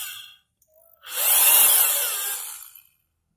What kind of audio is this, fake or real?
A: real